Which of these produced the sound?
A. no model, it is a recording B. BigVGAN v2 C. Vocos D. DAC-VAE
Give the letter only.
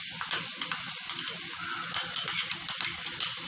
A